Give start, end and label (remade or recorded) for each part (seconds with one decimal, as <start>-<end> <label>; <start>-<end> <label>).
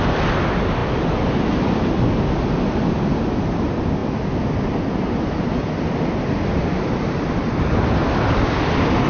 0.0-9.1 recorded